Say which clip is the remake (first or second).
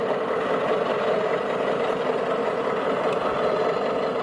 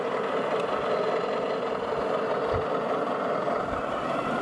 first